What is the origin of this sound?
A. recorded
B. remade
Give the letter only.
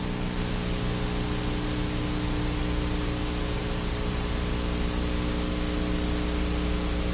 A